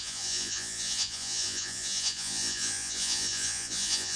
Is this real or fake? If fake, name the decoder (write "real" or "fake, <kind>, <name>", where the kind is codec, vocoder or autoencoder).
fake, vocoder, Vocos